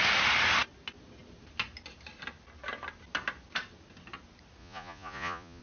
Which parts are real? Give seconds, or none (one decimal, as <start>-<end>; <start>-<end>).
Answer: 0.0-4.6